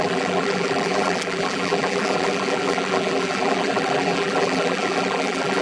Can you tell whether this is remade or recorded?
remade